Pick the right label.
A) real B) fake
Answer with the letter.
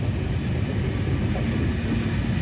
A